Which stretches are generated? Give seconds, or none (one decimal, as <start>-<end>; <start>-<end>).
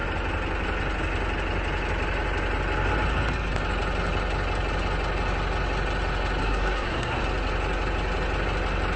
6.4-7.2